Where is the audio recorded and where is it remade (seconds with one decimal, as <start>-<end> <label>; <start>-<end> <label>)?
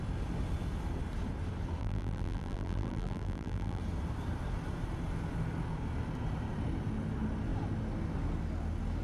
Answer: 0.0-1.8 recorded; 1.8-3.8 remade; 3.8-9.0 recorded